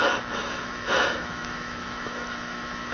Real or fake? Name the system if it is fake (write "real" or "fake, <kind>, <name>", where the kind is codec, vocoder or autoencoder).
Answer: fake, autoencoder, DAC-VAE